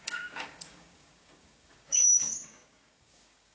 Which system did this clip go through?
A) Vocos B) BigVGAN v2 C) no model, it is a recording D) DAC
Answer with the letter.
D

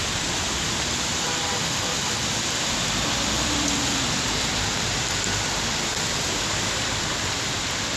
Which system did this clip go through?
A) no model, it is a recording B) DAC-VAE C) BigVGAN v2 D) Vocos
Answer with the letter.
C